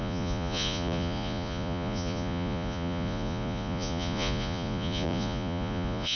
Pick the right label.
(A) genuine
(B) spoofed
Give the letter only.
B